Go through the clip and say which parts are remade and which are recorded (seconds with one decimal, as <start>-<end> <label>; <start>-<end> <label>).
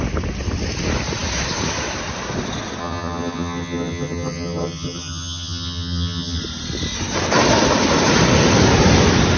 0.0-2.8 recorded; 2.8-6.4 remade; 6.4-9.4 recorded